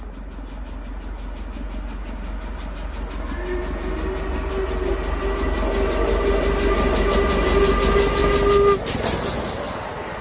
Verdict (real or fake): real